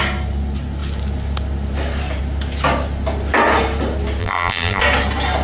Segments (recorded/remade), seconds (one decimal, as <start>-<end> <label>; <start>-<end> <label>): 0.0-4.2 recorded; 4.2-4.8 remade; 4.8-5.4 recorded